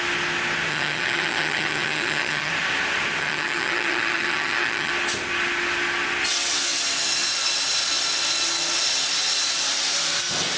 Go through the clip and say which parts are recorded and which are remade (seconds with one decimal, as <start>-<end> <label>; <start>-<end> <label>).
0.0-0.7 recorded; 0.7-2.5 remade; 2.5-3.2 recorded; 3.2-4.9 remade; 4.9-10.6 recorded